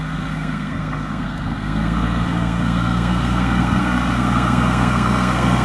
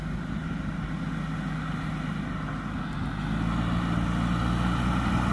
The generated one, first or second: first